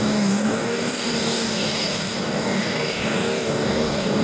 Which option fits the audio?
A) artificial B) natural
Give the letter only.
A